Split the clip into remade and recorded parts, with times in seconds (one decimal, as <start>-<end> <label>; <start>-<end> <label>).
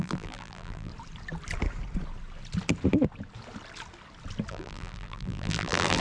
0.0-0.9 remade; 0.9-4.5 recorded; 4.5-6.0 remade